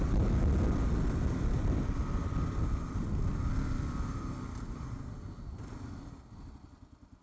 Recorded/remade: recorded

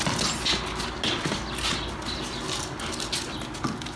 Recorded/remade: recorded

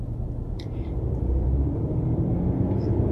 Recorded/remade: remade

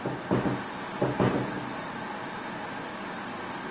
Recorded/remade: recorded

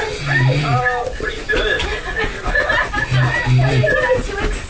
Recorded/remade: recorded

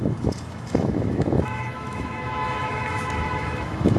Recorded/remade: remade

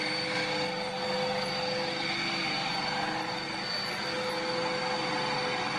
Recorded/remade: recorded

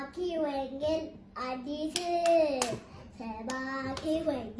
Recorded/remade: recorded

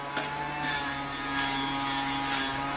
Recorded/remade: recorded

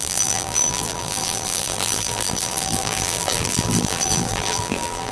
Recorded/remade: remade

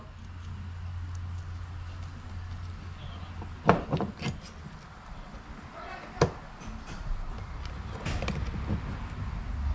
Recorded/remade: recorded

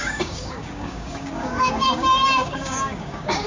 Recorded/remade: remade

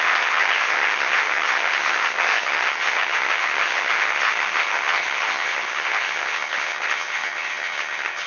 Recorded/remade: remade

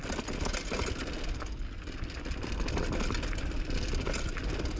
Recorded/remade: recorded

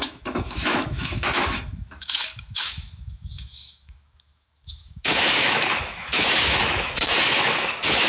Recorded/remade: remade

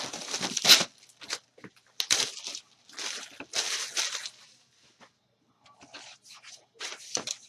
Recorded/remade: recorded